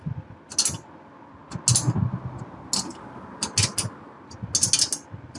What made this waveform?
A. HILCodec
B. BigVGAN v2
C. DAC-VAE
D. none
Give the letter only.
D